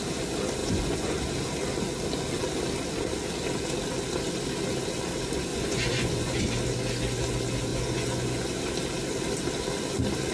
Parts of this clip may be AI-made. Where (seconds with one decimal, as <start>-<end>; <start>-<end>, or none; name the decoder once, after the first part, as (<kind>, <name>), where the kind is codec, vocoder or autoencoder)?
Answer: 0.6-1.3 (vocoder, Vocos); 5.5-6.4; 7.7-8.6